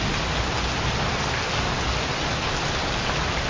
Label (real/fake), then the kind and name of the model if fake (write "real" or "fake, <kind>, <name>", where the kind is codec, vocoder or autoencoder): real